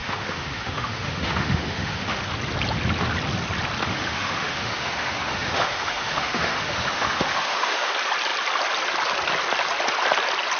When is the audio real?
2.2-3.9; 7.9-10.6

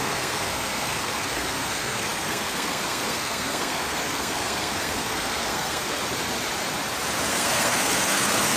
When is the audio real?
6.0-7.3

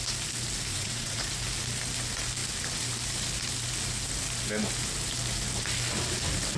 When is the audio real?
0.0-0.7; 1.2-6.6

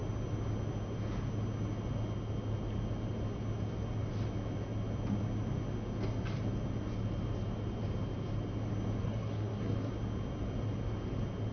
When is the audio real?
0.0-9.0; 9.9-11.5

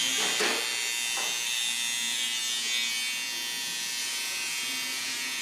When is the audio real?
0.0-4.0

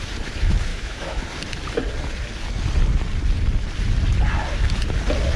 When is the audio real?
0.0-0.7; 1.2-5.4

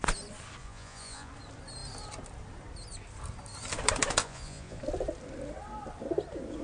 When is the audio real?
0.0-0.6; 1.3-4.2; 4.8-6.6

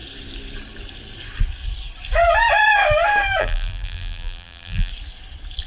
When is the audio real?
0.0-3.4; 4.9-5.7